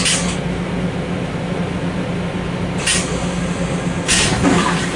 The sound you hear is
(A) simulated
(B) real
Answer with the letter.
B